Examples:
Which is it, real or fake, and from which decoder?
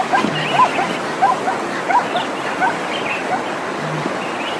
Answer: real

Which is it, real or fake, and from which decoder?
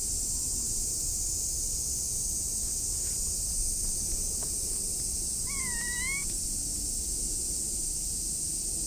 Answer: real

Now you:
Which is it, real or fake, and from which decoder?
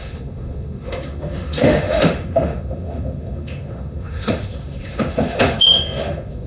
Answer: fake, autoencoder, DAC-VAE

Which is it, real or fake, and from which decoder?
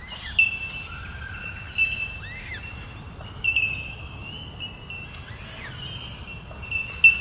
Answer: real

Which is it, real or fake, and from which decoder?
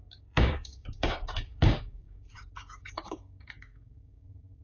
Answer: fake, codec, DAC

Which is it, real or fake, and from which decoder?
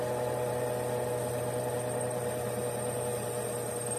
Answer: real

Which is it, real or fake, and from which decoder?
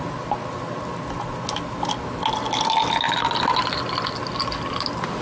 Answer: real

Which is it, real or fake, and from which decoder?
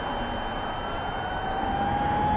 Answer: real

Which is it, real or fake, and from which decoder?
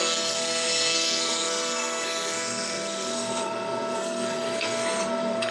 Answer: fake, codec, SNAC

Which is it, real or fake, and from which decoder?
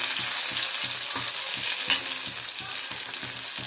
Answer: real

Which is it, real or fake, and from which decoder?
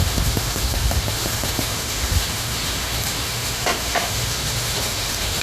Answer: fake, autoencoder, DAC-VAE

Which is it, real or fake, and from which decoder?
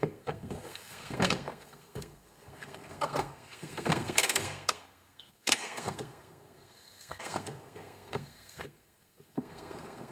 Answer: fake, codec, SNAC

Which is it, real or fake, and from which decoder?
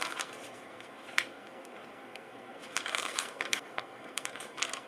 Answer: fake, codec, SNAC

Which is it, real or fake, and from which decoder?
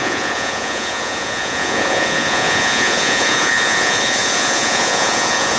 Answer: fake, vocoder, Vocos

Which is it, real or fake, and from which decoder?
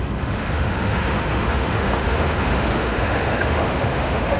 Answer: fake, autoencoder, DAC-VAE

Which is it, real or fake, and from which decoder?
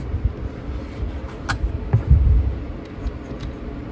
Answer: real